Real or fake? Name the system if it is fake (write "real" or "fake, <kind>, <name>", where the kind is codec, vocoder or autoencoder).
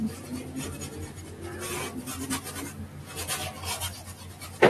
real